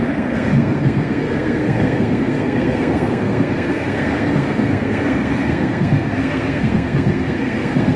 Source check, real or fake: fake